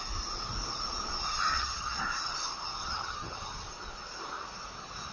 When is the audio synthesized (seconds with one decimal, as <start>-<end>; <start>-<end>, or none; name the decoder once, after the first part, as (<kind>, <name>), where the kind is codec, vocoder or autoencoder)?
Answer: 1.5-2.0 (vocoder, HiFi-GAN); 2.8-3.5